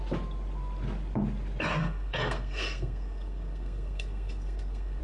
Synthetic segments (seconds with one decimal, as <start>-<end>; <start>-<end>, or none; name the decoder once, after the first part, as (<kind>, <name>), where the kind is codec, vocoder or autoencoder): 1.8-5.0 (codec, SNAC)